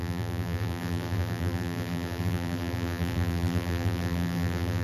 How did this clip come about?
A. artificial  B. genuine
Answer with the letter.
A